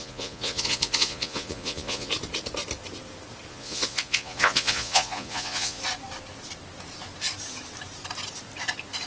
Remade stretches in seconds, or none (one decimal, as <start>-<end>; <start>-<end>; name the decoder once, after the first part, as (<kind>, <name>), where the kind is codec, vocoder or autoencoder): 0.0-2.1 (vocoder, Vocos); 3.5-5.8